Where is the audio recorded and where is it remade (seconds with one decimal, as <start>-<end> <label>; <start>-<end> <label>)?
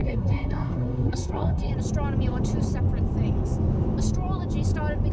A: 0.0-1.7 remade; 1.7-5.1 recorded